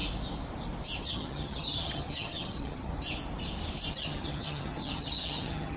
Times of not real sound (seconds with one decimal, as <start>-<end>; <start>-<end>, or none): 1.0-2.9; 3.9-5.8